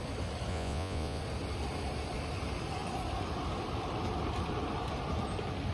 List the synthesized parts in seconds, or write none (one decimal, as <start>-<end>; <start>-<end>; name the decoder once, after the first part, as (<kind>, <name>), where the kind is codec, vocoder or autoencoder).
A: 0.5-1.2 (vocoder, Vocos)